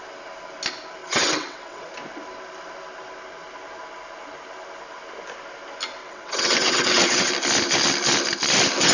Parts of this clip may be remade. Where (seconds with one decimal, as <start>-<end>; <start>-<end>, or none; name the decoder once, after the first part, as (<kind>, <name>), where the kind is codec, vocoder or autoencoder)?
1.0-1.9 (vocoder, WaveNeXt); 6.0-7.3